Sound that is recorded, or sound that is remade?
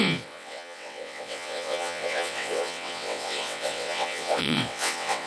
remade